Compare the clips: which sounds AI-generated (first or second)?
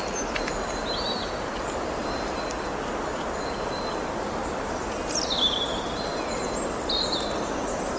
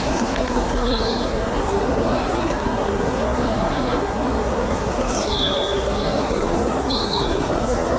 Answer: second